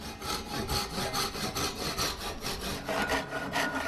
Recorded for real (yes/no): yes